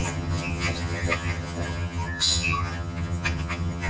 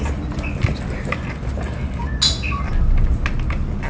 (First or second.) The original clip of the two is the second